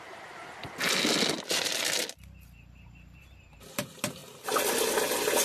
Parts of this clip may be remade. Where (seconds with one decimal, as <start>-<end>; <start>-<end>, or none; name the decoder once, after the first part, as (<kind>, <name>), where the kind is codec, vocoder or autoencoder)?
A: 0.0-0.6 (vocoder, BigVGAN v2); 3.8-4.2